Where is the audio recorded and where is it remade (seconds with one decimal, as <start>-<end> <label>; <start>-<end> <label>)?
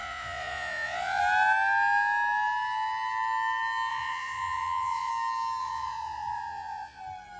0.0-1.2 remade; 1.2-3.9 recorded; 3.9-5.1 remade; 5.1-5.6 recorded; 5.6-7.0 remade; 7.0-7.4 recorded